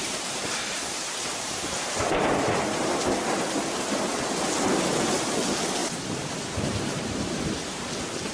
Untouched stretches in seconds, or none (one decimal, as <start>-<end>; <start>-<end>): 3.0-5.8; 7.9-8.3